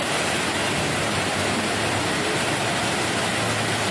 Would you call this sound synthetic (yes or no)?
no